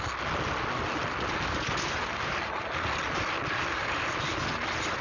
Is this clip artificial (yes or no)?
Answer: no